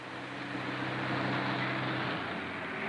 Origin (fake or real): real